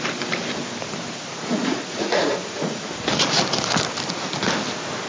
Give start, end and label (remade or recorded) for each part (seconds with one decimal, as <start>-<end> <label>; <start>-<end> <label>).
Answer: 0.0-1.3 recorded; 1.3-2.8 remade; 2.8-5.1 recorded